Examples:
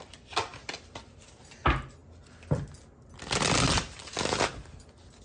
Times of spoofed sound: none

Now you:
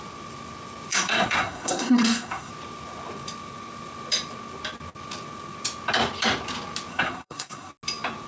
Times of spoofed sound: 0.9-2.5 (codec, SNAC); 6.9-7.7

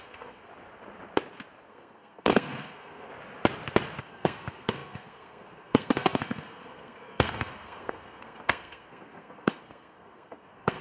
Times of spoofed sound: 0.0-0.5 (codec, SNAC); 1.7-3.1; 4.0-10.8

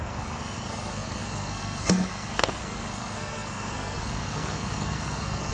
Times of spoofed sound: 0.0-5.5 (codec, SNAC)

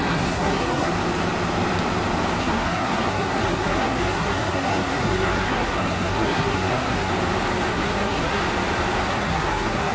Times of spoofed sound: 0.0-0.9 (codec, SNAC); 2.4-7.1; 7.7-8.4; 9.1-9.9

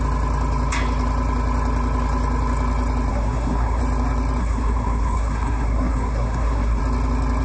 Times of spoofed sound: 3.1-3.8 (codec, SNAC); 4.4-6.8

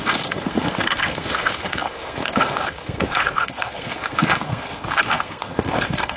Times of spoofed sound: 0.0-6.2 (codec, SNAC)